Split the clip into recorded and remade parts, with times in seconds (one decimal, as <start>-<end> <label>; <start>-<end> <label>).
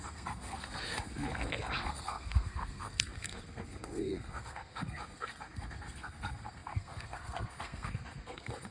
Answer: 0.0-8.7 remade